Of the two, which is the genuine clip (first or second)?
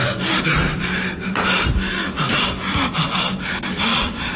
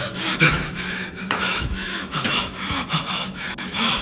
first